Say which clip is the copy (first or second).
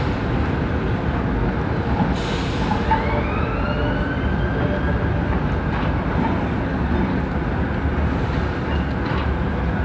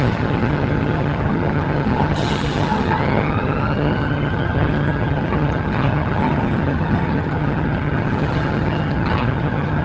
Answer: second